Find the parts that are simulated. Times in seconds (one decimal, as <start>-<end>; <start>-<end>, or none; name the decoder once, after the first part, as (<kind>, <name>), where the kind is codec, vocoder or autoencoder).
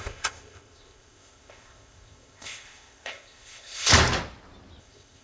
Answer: 0.0-3.9 (codec, ZipCodec); 4.8-5.2